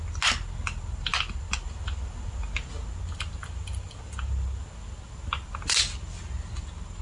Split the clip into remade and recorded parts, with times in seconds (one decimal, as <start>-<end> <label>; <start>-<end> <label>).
0.0-7.0 recorded